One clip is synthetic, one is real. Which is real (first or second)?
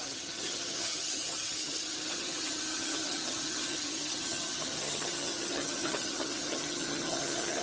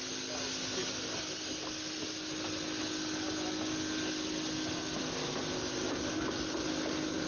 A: second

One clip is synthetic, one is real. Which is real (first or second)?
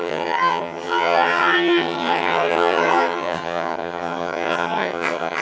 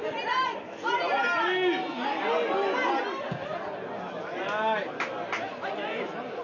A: second